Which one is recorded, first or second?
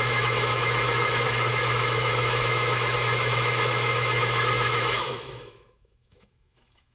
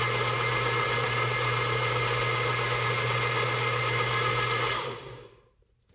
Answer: second